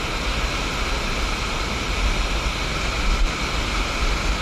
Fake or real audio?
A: real